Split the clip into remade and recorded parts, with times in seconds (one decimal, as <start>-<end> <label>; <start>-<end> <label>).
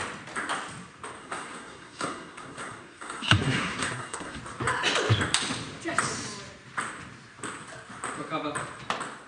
0.0-1.2 recorded; 1.2-4.4 remade; 4.4-9.3 recorded